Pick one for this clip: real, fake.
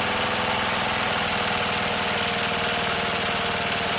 real